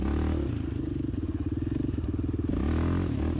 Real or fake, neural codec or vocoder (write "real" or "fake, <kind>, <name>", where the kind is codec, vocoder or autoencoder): real